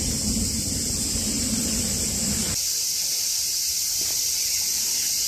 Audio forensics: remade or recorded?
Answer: recorded